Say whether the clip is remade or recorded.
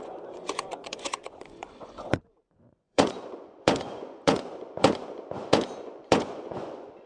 remade